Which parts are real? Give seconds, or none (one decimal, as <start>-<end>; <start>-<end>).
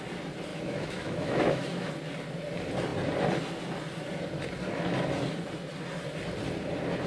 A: 0.0-0.5; 1.9-7.1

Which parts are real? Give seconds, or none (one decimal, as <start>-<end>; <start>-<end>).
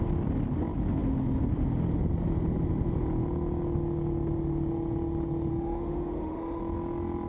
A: 0.0-5.5; 6.6-7.3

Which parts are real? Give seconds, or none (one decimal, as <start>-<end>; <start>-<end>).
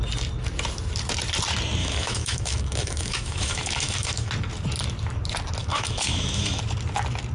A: 0.0-1.8; 4.3-5.6; 6.6-7.3